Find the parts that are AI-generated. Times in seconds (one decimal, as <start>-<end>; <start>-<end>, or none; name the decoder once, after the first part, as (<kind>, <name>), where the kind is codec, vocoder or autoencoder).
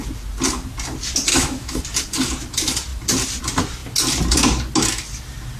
1.3-1.8 (autoencoder, DAC-VAE)